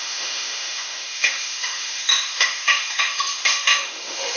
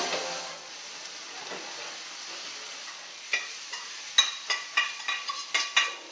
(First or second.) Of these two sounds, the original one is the second